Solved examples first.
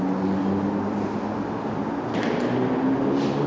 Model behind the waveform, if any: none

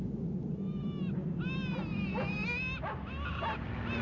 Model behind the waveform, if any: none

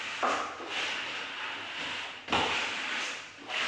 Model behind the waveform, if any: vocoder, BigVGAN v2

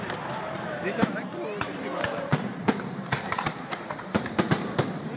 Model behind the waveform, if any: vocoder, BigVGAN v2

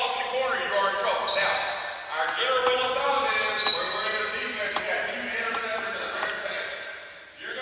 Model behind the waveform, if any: none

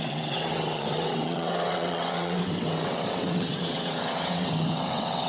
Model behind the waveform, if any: vocoder, WaveNeXt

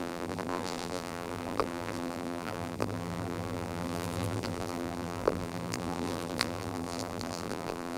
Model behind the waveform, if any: vocoder, BigVGAN v2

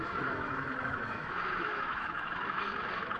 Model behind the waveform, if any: autoencoder, DAC-VAE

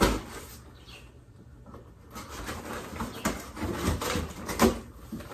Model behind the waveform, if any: none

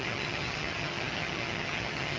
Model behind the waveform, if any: vocoder, HiFi-GAN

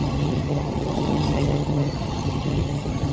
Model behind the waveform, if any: vocoder, HiFi-GAN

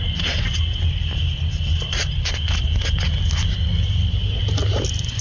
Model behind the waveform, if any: none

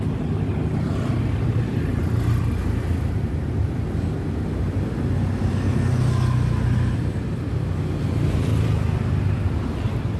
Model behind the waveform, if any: none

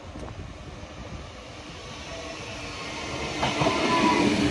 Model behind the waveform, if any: none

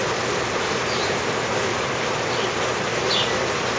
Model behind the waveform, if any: vocoder, BigVGAN v2